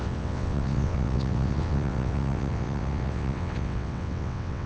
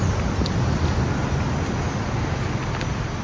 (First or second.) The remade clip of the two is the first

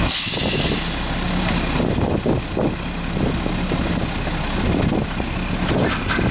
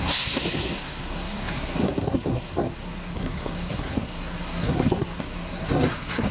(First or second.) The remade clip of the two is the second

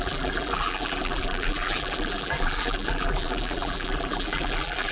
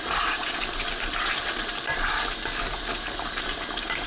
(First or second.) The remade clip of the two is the first